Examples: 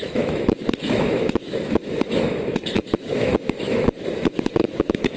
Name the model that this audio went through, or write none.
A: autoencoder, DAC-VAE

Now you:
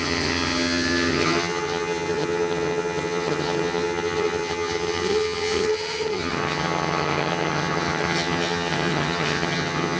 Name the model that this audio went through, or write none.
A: vocoder, HiFi-GAN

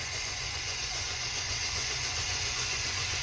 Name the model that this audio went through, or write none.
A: vocoder, Vocos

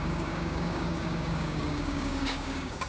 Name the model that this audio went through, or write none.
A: codec, DAC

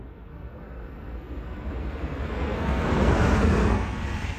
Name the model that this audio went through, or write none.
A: codec, SNAC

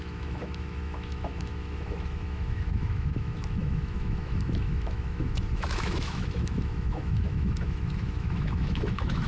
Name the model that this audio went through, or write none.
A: autoencoder, DAC-VAE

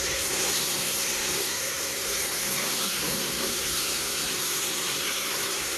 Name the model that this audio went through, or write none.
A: codec, SNAC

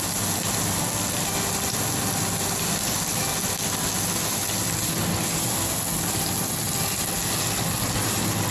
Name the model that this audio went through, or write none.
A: none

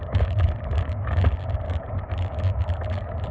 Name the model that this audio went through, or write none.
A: codec, DAC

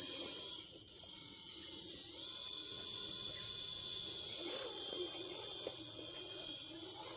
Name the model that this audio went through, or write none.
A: vocoder, Vocos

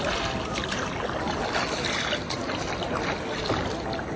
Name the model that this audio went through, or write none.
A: none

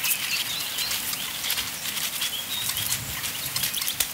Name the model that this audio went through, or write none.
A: none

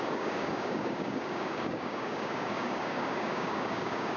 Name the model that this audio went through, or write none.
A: codec, DAC